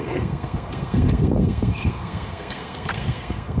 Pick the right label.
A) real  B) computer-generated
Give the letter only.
B